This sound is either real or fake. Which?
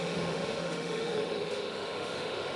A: fake